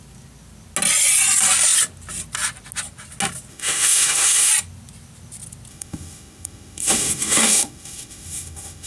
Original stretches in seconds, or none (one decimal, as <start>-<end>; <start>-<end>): 0.0-3.5; 4.5-5.7